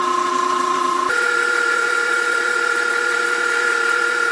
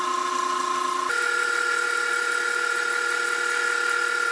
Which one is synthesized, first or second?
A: first